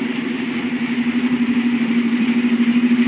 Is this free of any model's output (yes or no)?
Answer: no